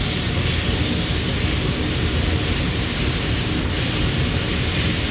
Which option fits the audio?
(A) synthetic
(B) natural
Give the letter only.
B